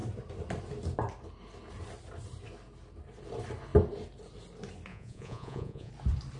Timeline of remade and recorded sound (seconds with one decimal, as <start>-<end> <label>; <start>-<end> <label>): 0.0-4.9 recorded; 4.9-5.9 remade; 5.9-6.4 recorded